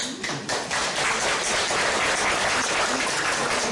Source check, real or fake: real